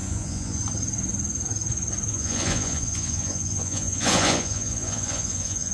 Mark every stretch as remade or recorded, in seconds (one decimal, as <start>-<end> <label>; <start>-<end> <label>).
0.0-0.6 remade; 0.6-2.1 recorded; 2.1-5.7 remade